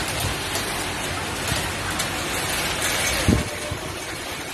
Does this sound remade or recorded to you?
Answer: recorded